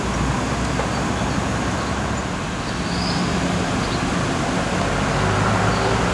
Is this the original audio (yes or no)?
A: yes